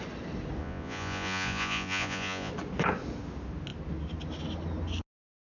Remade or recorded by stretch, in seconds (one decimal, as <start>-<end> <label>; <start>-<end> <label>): 0.0-0.6 recorded; 0.6-2.5 remade; 2.5-5.4 recorded